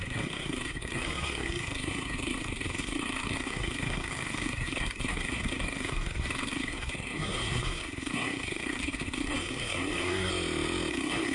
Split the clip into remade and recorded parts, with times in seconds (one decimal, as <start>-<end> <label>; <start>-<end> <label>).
0.0-10.3 remade; 10.3-10.9 recorded; 10.9-11.3 remade